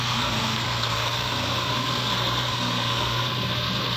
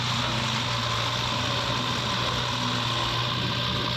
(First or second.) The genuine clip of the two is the second